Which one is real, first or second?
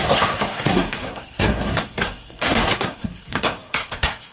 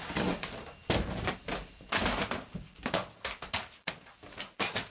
second